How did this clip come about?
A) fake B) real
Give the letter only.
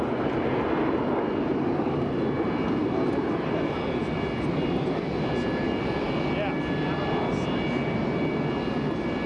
B